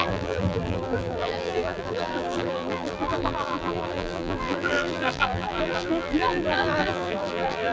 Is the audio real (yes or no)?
no